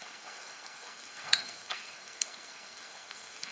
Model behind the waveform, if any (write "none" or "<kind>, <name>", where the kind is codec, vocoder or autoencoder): codec, SNAC